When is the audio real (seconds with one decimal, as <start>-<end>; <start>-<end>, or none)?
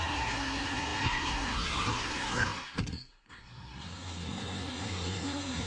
none